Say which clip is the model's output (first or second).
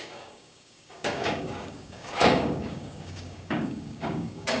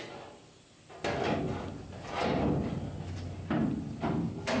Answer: first